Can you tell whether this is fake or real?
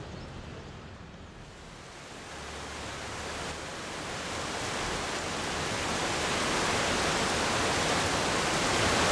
real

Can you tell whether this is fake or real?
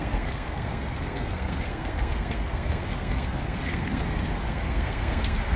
fake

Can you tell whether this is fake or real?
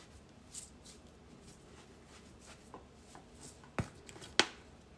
real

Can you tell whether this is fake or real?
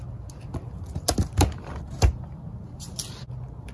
real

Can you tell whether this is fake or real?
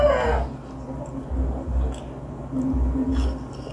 real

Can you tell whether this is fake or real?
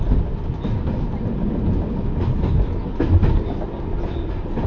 real